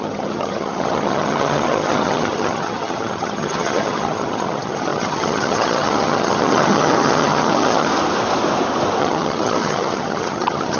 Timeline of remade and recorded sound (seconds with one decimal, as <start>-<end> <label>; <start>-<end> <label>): 0.0-7.9 remade; 7.9-9.0 recorded; 9.0-10.8 remade